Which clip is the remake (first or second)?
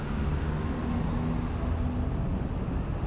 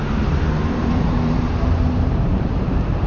second